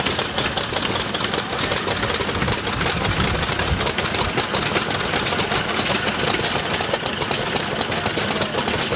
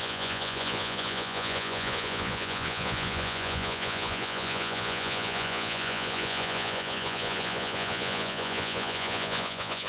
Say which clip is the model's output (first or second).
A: second